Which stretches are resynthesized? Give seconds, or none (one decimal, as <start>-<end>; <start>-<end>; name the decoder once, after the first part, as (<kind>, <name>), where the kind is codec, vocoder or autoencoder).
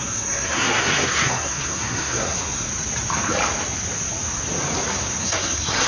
0.0-2.7 (codec, SNAC); 5.2-5.9